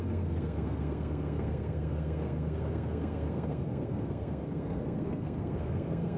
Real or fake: fake